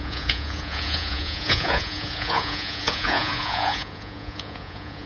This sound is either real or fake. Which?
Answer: fake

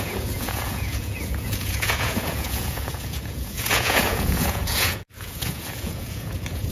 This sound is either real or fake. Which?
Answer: fake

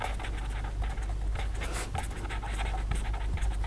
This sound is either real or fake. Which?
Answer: real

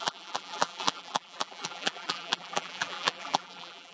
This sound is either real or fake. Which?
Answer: fake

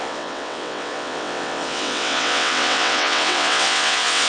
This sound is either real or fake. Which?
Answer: fake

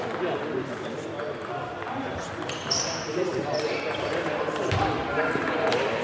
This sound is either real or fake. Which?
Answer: real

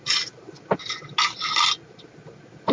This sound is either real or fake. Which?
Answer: real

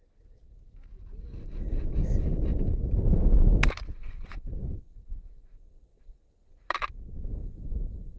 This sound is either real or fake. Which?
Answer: real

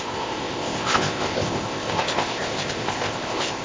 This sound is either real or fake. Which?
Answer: fake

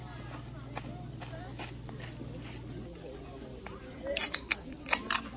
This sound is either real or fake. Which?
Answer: real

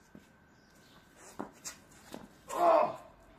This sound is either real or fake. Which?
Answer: real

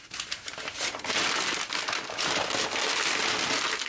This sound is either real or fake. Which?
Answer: real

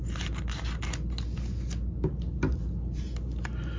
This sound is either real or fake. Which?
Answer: real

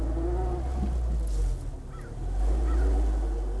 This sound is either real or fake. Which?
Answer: real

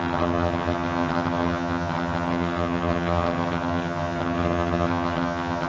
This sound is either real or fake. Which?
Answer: fake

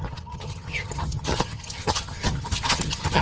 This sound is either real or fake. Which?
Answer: fake